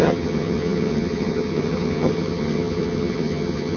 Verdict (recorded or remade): remade